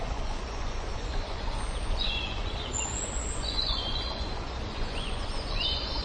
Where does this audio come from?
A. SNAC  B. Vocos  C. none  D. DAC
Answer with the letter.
B